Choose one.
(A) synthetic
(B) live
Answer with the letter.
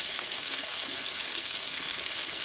A